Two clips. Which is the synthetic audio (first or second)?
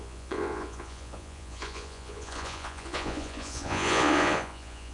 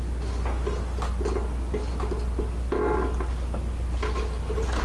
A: first